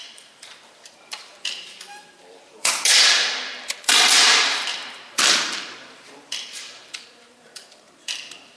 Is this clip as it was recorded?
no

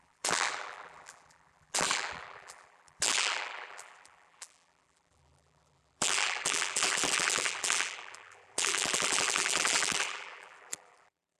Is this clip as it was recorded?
no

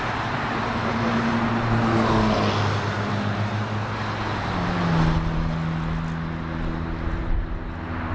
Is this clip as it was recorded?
yes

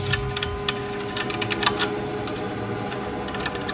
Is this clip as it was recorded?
yes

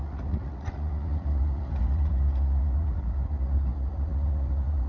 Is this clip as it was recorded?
no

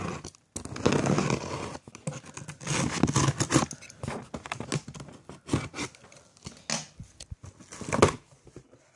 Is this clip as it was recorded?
yes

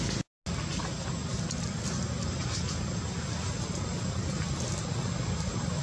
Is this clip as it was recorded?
yes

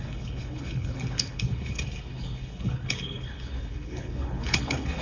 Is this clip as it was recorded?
no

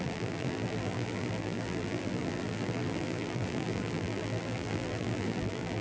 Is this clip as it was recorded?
no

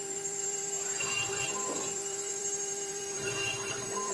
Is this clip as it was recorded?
no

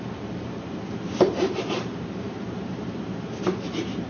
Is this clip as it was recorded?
no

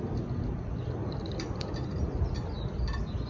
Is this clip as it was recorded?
yes